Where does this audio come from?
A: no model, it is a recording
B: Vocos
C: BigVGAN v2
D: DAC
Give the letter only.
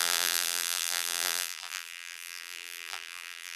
C